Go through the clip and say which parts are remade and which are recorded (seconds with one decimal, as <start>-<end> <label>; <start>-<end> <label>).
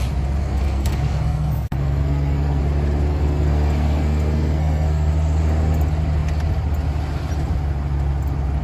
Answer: 0.0-0.4 recorded; 0.4-2.6 remade; 2.6-3.1 recorded; 3.1-5.1 remade; 5.1-8.6 recorded